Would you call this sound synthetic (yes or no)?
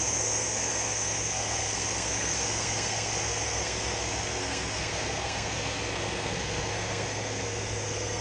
yes